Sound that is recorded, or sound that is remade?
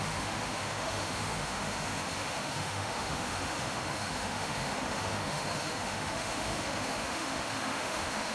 remade